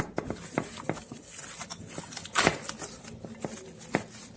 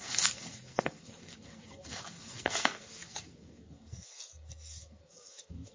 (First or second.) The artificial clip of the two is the second